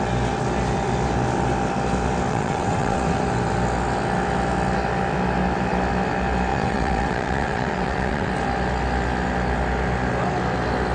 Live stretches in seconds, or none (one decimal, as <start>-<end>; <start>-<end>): 0.0-2.3; 3.2-6.5; 8.3-10.9